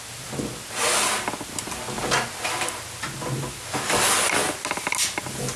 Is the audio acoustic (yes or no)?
yes